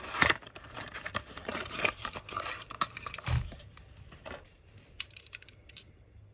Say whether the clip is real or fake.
fake